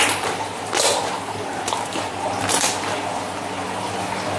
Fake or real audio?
real